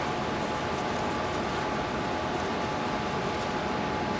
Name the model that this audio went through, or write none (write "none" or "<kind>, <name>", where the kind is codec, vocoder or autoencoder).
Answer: none